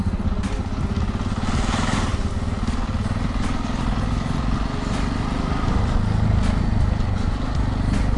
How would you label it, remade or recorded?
recorded